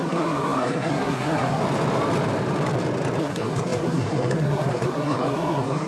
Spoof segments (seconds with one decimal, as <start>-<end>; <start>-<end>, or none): 0.0-1.6; 3.2-5.9